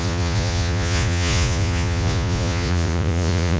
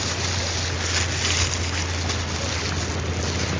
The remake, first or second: first